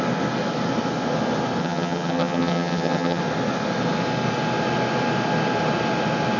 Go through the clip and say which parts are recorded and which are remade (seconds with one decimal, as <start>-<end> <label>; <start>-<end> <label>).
0.0-1.6 recorded; 1.6-3.2 remade; 3.2-6.4 recorded